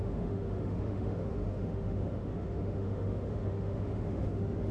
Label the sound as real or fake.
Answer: fake